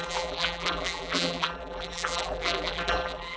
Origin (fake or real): fake